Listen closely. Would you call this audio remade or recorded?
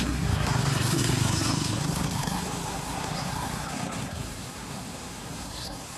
remade